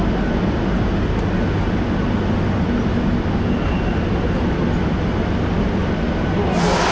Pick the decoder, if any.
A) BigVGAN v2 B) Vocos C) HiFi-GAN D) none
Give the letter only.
D